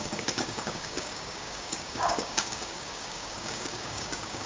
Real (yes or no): no